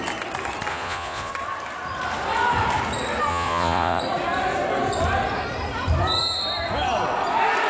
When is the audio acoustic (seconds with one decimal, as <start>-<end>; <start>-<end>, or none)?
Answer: 0.0-0.7; 1.3-3.3; 4.0-7.7